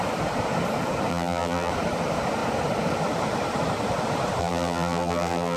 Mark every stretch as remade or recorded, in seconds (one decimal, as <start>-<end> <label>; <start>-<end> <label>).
0.0-1.1 recorded; 1.1-1.7 remade; 1.7-4.4 recorded; 4.4-5.6 remade